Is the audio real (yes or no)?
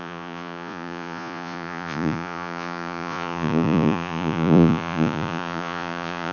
no